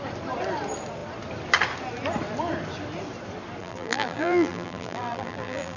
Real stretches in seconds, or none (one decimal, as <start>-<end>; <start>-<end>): 0.0-3.6